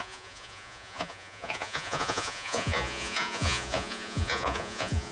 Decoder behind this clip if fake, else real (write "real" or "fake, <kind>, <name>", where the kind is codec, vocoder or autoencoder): fake, vocoder, Vocos